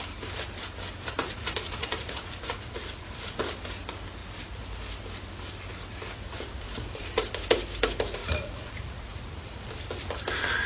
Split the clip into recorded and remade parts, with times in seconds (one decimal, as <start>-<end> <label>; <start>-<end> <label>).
0.0-1.2 recorded; 1.2-3.4 remade; 3.4-8.2 recorded; 8.2-9.7 remade; 9.7-10.7 recorded

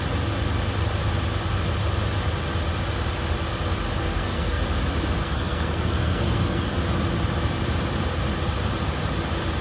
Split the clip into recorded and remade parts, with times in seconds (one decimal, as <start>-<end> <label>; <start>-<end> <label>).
0.0-4.0 recorded; 4.0-4.6 remade; 4.6-5.2 recorded; 5.2-6.7 remade; 6.7-9.6 recorded

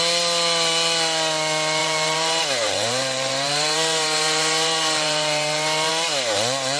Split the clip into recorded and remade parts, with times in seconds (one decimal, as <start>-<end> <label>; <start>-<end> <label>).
0.0-1.8 recorded; 1.8-5.9 remade; 5.9-6.8 recorded